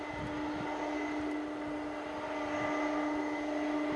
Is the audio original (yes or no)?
yes